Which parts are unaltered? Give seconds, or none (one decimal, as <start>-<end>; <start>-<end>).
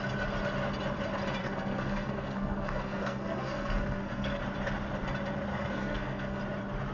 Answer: 0.0-1.4; 4.4-5.5; 6.4-6.9